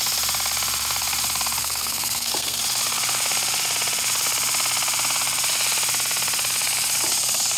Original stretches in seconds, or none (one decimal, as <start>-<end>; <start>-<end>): 0.0-1.6; 2.6-7.6